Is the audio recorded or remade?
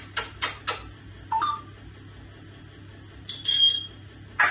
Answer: recorded